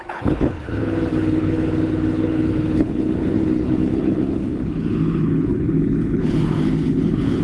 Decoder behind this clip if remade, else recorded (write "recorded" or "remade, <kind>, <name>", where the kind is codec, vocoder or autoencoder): remade, codec, HILCodec